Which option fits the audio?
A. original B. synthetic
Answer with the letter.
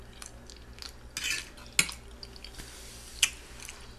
A